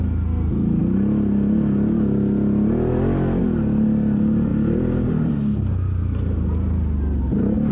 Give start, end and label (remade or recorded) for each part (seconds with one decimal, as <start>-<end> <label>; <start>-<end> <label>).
0.0-4.5 recorded; 4.5-5.3 remade; 5.3-7.7 recorded

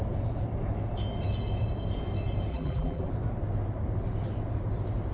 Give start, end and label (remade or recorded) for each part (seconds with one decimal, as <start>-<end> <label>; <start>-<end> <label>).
0.0-2.5 recorded; 2.5-3.1 remade; 3.1-5.1 recorded

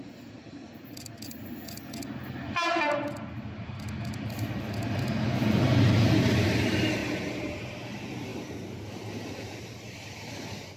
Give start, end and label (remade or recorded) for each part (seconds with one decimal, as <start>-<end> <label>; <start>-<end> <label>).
0.0-7.0 recorded; 7.0-7.7 remade; 7.7-10.8 recorded

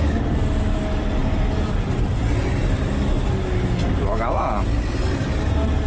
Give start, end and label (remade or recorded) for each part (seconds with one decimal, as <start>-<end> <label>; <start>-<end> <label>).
0.0-1.2 recorded; 1.2-2.2 remade; 2.2-5.9 recorded

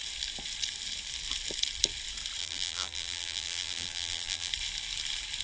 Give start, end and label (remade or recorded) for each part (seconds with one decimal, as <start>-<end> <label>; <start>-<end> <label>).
0.0-2.4 recorded; 2.4-4.5 remade; 4.5-5.4 recorded

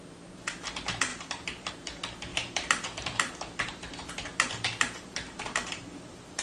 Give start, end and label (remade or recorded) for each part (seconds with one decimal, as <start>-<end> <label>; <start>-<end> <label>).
0.0-1.1 recorded; 1.1-1.7 remade; 1.7-2.3 recorded; 2.3-6.4 remade